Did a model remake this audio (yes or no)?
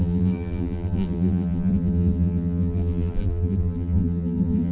yes